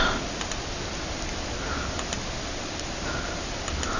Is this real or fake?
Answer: real